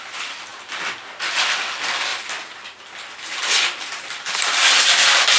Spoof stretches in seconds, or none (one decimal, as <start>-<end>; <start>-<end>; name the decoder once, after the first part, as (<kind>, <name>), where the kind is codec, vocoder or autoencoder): 2.1-5.4 (vocoder, BigVGAN v2)